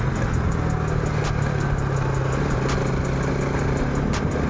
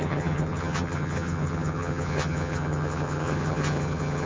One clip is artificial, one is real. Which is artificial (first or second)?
second